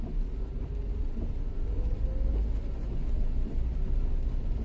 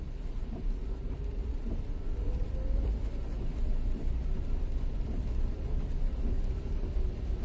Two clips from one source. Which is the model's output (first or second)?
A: second